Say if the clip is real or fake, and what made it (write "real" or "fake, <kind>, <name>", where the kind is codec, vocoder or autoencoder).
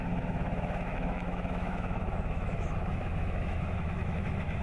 fake, autoencoder, DAC-VAE